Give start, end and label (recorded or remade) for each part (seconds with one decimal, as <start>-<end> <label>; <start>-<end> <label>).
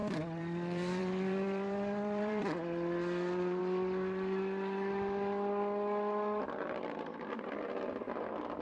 0.0-3.6 remade; 3.6-8.6 recorded